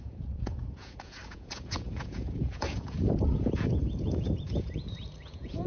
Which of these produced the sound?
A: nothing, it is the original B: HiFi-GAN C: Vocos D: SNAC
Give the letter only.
C